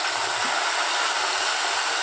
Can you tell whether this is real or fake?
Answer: real